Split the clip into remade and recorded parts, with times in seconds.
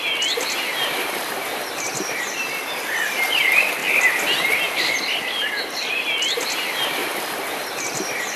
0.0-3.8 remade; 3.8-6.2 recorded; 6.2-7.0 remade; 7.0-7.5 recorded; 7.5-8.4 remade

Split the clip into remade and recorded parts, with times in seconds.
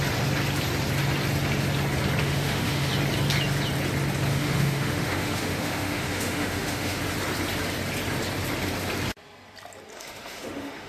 0.0-2.2 recorded; 2.2-2.9 remade; 2.9-4.3 recorded; 4.3-7.0 remade; 7.0-9.9 recorded; 9.9-10.9 remade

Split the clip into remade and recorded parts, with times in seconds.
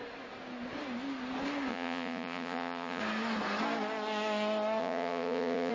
0.0-1.7 recorded; 1.7-3.0 remade; 3.0-4.8 recorded; 4.8-5.7 remade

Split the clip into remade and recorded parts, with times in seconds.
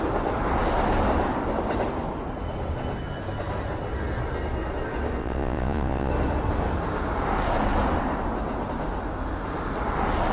0.0-5.2 recorded; 5.2-6.1 remade; 6.1-10.3 recorded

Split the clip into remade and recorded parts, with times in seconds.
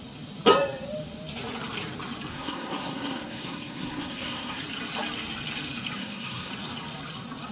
0.0-2.3 recorded; 2.3-4.6 remade; 4.6-6.0 recorded; 6.0-6.5 remade; 6.5-7.5 recorded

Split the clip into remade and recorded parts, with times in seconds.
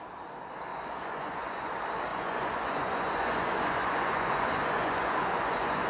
0.0-0.7 recorded; 0.7-1.7 remade; 1.7-2.1 recorded; 2.1-5.9 remade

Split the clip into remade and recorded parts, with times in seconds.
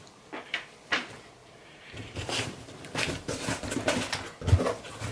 0.0-1.4 recorded; 1.4-3.1 remade; 3.1-5.1 recorded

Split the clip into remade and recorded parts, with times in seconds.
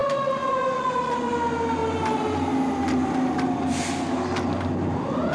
0.0-1.3 remade; 1.3-5.3 recorded